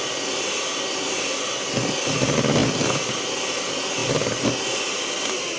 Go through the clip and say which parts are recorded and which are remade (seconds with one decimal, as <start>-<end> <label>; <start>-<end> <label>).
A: 0.0-5.6 recorded

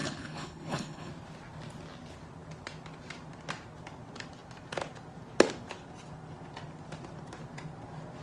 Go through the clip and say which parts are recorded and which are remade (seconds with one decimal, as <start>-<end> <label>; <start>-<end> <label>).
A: 0.0-1.1 remade; 1.1-8.2 recorded